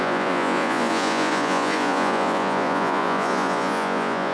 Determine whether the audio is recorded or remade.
remade